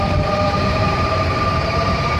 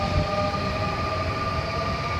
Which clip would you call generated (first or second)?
first